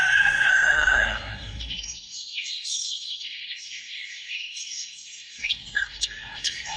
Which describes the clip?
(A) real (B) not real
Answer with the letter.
B